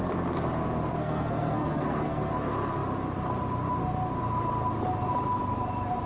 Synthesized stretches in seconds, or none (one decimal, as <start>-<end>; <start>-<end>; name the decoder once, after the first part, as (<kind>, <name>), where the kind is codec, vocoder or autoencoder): 0.9-2.3 (codec, SNAC)